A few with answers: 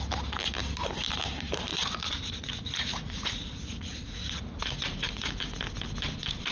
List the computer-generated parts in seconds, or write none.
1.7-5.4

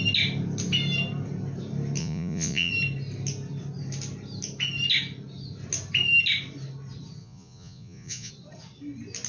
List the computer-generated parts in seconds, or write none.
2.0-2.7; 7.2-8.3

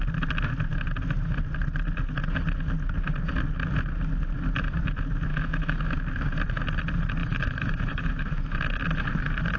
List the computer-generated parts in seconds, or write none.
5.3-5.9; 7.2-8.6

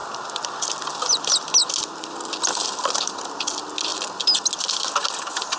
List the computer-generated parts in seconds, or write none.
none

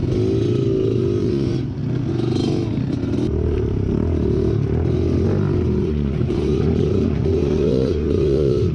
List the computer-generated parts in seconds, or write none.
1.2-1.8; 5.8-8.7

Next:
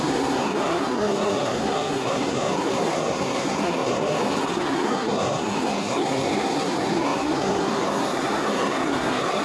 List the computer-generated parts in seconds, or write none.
0.0-9.4

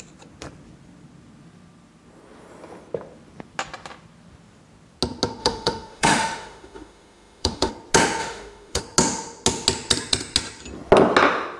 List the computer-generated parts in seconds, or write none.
5.4-7.7; 8.2-8.8